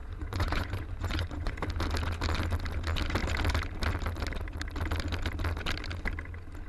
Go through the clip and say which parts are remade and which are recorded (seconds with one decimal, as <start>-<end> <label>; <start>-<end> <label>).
0.0-1.5 remade; 1.5-6.7 recorded